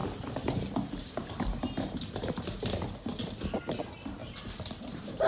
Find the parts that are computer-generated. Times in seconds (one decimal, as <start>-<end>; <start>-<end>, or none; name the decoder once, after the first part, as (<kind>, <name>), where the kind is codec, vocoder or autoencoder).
4.2-5.3 (vocoder, BigVGAN v2)